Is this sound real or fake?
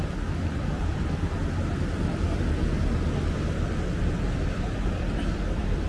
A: real